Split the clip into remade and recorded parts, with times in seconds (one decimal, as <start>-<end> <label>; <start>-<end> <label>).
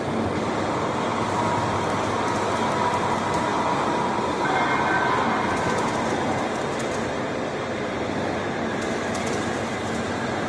0.0-10.5 recorded